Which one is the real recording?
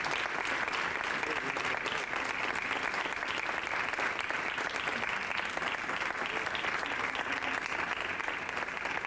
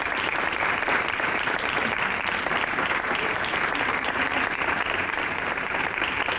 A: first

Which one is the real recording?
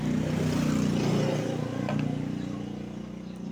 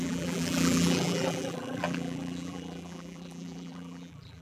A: first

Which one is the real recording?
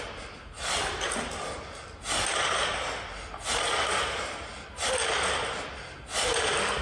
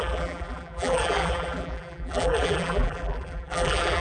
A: first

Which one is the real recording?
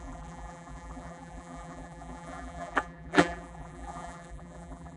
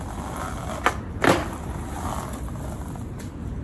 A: second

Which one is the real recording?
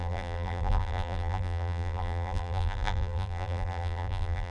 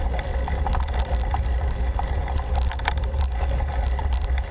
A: second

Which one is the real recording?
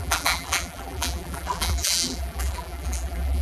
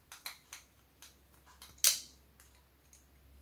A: second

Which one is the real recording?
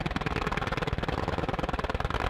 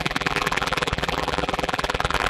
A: first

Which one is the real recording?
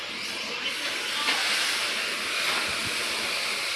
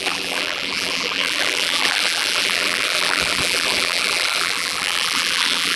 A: first